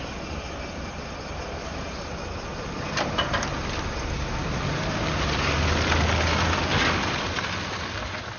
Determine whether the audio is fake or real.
real